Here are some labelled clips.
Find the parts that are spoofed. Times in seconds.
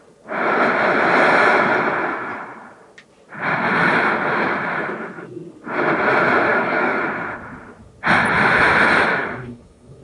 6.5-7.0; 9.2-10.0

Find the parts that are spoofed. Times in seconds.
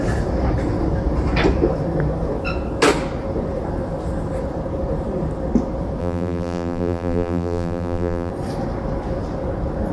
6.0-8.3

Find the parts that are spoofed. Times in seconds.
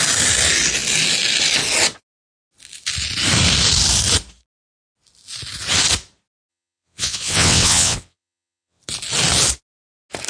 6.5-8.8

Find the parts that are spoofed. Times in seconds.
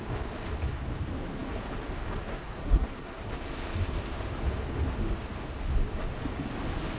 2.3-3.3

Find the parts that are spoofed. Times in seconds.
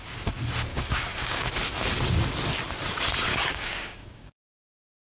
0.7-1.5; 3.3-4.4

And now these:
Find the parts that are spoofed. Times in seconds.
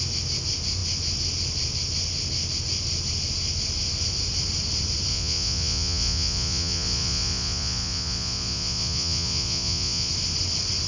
5.1-10.1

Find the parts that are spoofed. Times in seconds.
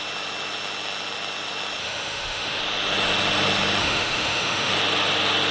1.8-2.6; 3.8-4.7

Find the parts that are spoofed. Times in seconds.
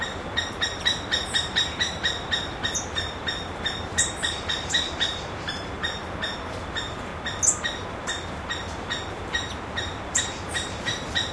0.0-6.0; 6.6-7.1; 7.9-11.3